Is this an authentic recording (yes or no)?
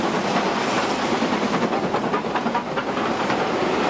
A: yes